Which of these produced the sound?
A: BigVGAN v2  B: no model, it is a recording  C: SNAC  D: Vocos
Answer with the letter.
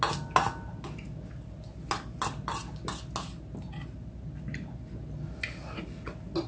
B